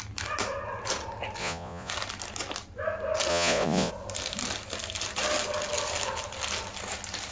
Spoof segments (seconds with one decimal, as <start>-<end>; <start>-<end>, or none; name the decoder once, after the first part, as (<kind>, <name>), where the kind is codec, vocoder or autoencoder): 1.4-1.9 (vocoder, Vocos); 3.3-3.9